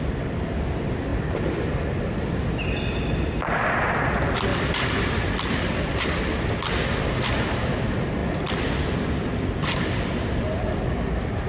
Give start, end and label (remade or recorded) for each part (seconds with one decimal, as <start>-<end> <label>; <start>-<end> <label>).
0.0-1.1 recorded; 1.1-2.0 remade; 2.0-8.2 recorded; 8.2-11.5 remade